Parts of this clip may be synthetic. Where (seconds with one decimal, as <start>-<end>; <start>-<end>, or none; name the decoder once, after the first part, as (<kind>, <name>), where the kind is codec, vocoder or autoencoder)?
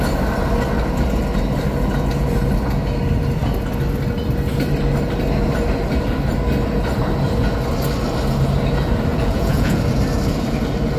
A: 9.1-9.8 (vocoder, Vocos)